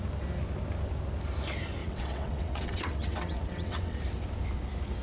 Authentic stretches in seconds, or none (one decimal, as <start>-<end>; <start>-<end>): 0.0-1.8; 4.0-5.0

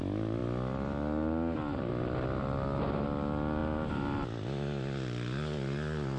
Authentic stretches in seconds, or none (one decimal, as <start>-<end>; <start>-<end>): 0.0-6.2

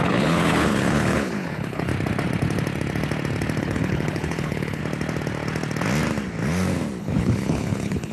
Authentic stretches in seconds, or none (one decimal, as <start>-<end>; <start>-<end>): 1.9-3.6; 4.8-7.0

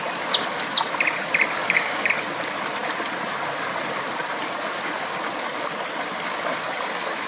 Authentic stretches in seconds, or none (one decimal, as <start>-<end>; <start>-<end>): 0.0-1.6; 2.1-7.3

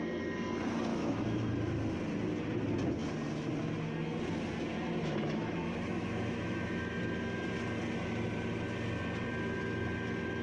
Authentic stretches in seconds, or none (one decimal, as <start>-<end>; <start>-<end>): 0.0-0.9; 1.5-5.0; 7.0-10.4

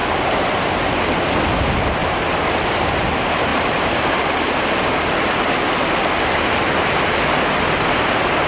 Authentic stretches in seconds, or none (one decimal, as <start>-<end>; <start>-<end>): 0.0-3.5; 4.2-8.5